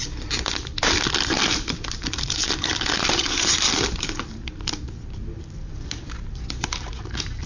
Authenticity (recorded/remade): remade